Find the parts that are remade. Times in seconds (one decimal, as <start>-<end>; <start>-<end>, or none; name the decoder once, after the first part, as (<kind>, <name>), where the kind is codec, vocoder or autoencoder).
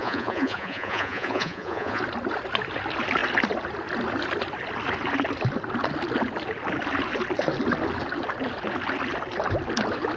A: 0.0-2.0 (vocoder, Vocos)